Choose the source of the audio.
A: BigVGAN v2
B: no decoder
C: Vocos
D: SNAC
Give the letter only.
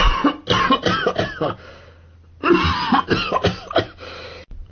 B